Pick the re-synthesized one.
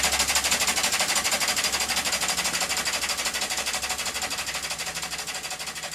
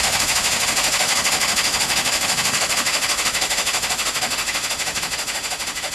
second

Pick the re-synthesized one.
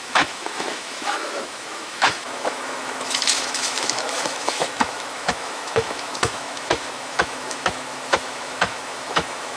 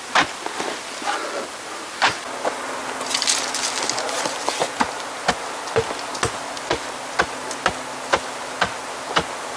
first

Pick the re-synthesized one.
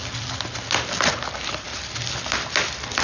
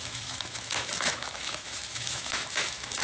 second